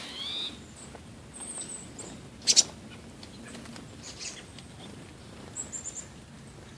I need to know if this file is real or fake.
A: real